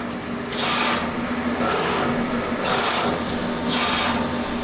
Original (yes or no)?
yes